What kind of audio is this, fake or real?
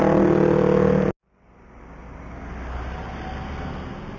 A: real